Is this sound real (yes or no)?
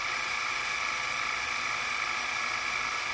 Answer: no